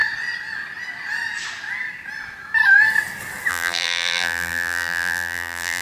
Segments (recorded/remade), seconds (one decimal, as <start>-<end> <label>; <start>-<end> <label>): 0.0-3.5 recorded; 3.5-5.8 remade